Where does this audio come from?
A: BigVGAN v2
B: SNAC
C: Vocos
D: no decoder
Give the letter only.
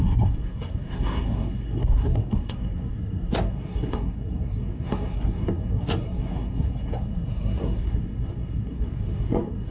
B